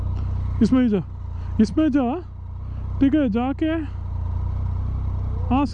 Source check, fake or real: real